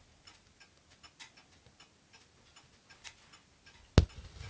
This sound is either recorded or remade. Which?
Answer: recorded